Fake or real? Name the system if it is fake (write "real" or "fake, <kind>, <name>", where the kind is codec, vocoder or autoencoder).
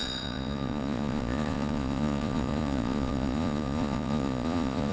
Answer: fake, vocoder, Vocos